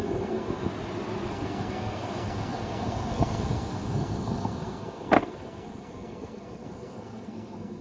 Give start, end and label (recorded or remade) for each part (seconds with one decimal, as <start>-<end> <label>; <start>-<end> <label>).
0.0-0.7 remade; 0.7-1.3 recorded; 1.3-7.8 remade